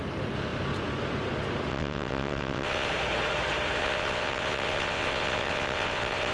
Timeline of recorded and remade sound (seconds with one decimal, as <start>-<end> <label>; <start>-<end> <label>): 0.0-1.7 recorded; 1.7-2.9 remade; 2.9-3.8 recorded; 3.8-6.3 remade